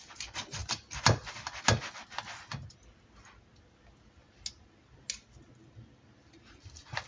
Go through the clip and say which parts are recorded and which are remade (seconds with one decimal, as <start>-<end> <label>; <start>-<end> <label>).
0.0-7.1 recorded